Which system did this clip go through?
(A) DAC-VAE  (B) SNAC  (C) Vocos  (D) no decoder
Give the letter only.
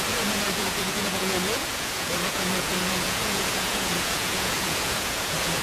C